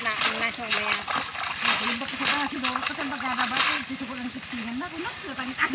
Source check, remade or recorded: recorded